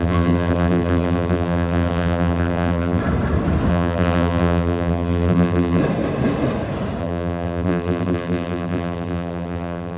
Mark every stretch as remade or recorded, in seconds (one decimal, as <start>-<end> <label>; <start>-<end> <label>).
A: 0.0-3.0 remade; 3.0-3.7 recorded; 3.7-5.8 remade; 5.8-7.0 recorded; 7.0-10.0 remade